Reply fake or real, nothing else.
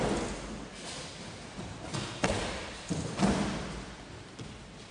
real